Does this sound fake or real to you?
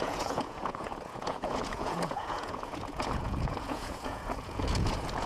fake